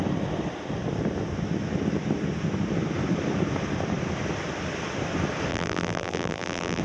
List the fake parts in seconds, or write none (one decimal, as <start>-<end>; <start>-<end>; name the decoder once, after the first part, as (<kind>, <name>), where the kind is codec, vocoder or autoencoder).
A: 5.5-6.8 (vocoder, BigVGAN v2)